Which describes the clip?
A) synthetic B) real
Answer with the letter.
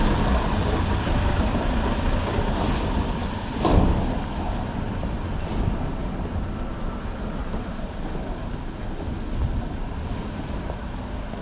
B